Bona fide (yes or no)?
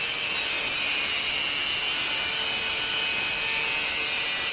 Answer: yes